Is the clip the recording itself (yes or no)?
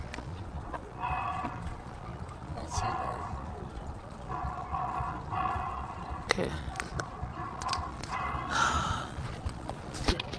no